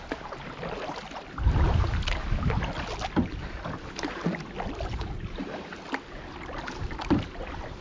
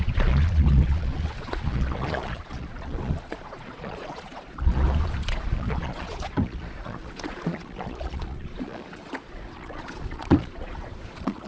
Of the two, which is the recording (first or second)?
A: first